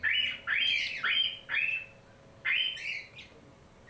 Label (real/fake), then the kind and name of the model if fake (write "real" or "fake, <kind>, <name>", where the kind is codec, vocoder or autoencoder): real